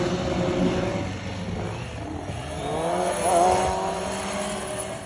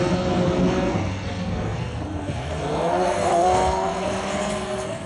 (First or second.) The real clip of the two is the first